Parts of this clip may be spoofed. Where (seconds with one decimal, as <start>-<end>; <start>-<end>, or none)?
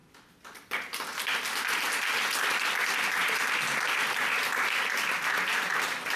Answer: none